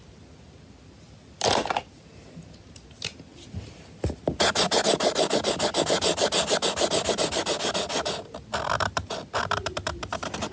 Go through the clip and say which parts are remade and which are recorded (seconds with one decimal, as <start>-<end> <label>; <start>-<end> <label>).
0.0-10.5 recorded